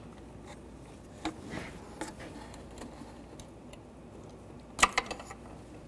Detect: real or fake real